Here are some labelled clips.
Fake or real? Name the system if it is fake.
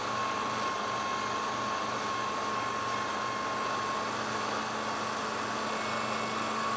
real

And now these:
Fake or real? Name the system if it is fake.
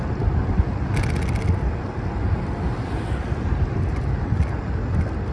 real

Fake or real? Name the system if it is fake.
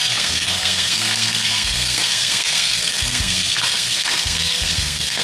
fake, codec, SNAC